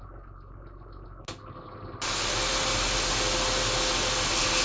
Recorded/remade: recorded